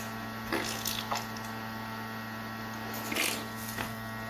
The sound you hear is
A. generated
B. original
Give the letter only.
B